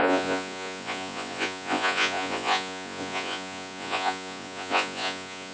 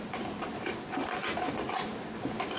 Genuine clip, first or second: second